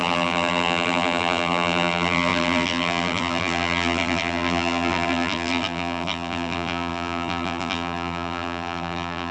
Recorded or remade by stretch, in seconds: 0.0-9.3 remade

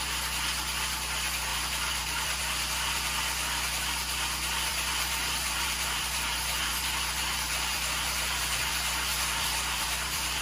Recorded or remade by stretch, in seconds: 0.0-1.5 recorded; 1.5-2.4 remade; 2.4-4.7 recorded; 4.7-8.7 remade; 8.7-9.1 recorded; 9.1-10.4 remade